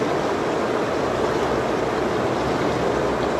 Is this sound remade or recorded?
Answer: recorded